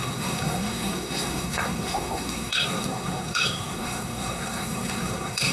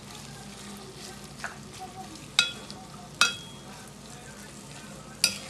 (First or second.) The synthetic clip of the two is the first